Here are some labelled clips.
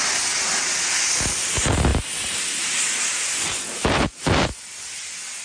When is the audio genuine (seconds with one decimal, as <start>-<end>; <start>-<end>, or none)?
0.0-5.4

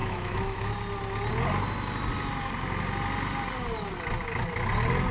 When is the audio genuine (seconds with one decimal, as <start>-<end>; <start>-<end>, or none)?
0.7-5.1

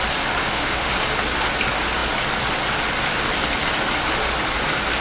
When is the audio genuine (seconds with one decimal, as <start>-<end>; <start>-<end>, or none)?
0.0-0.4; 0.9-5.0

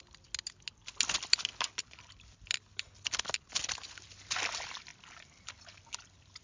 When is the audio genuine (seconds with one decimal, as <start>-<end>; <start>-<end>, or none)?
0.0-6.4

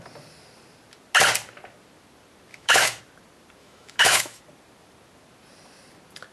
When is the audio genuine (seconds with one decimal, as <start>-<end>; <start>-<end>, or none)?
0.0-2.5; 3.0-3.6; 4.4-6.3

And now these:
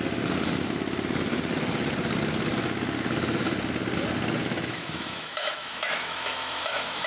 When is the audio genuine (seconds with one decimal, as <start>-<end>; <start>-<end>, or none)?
0.0-4.4

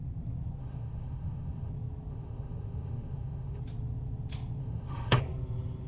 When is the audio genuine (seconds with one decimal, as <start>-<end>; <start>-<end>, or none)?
0.0-0.6; 1.7-2.1; 3.6-4.6; 5.2-5.9